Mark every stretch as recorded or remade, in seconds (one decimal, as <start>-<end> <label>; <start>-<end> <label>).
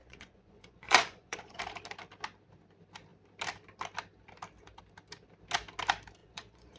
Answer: 0.0-1.6 remade; 1.6-6.2 recorded; 6.2-6.8 remade